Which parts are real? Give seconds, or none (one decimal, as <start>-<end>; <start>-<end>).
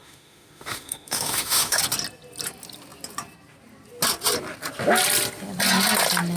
1.8-6.4